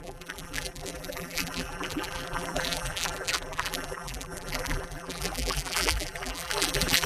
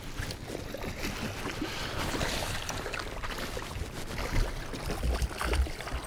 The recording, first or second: second